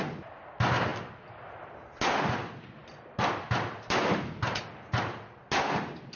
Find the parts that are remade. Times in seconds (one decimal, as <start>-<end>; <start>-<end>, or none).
none